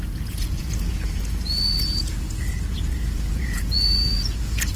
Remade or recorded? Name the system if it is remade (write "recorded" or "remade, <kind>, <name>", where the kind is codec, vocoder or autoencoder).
remade, vocoder, Vocos